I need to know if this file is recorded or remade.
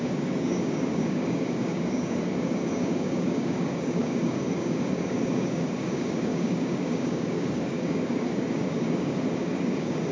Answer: remade